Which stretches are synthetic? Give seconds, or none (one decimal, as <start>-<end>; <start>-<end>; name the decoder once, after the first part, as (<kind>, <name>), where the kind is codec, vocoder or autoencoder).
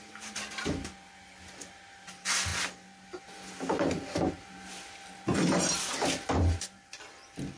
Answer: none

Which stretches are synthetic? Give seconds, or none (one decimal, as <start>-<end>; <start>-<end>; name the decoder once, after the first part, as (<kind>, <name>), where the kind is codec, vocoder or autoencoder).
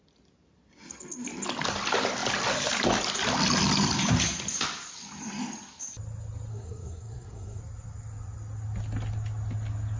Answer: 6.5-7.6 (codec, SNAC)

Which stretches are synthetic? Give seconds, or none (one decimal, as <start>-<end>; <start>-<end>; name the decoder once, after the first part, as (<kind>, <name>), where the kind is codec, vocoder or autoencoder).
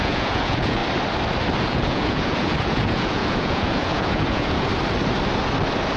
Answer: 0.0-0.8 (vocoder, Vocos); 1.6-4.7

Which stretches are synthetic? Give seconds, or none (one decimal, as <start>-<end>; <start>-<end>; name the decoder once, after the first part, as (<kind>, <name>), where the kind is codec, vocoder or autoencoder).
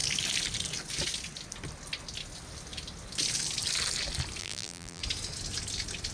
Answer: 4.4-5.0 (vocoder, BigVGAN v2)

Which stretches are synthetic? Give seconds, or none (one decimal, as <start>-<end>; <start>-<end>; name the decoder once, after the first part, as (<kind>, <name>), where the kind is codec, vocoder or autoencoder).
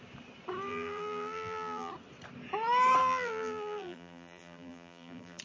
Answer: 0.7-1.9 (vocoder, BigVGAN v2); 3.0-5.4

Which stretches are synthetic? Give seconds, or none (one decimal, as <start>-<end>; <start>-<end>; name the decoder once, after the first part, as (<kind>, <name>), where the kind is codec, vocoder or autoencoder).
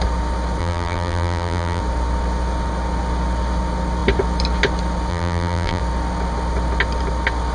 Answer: 0.6-1.8 (vocoder, BigVGAN v2); 5.1-5.8